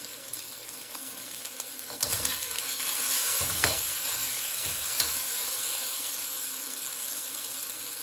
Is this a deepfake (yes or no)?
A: yes